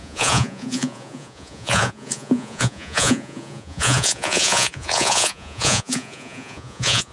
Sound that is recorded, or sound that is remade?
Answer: remade